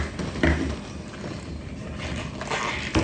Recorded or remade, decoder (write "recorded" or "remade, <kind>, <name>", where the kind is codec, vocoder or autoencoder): recorded